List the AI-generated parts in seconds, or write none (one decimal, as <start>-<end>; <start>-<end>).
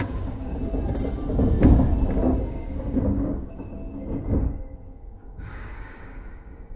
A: 0.0-0.6; 2.5-6.8